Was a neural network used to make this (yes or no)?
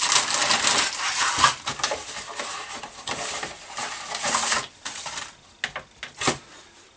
no